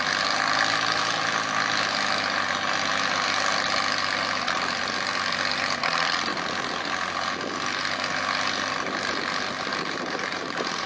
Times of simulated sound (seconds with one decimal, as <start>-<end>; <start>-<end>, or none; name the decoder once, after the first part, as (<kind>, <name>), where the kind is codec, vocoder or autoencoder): 9.7-10.9 (vocoder, BigVGAN v2)